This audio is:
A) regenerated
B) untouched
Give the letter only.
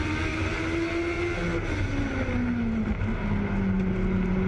B